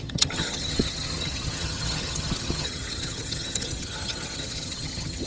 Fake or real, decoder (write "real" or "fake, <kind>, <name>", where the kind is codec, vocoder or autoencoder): fake, vocoder, HiFi-GAN